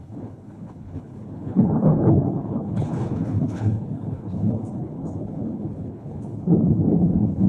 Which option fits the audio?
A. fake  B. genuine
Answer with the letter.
A